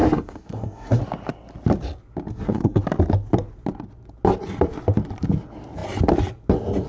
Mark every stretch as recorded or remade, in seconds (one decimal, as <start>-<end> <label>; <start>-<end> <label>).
0.0-1.0 remade; 1.0-2.3 recorded; 2.3-2.8 remade; 2.8-6.9 recorded